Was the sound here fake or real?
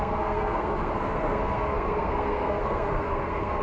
fake